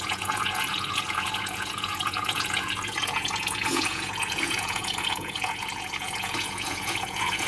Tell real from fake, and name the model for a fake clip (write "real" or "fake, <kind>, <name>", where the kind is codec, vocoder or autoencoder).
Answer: fake, vocoder, Vocos